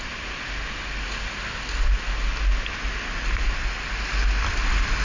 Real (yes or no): yes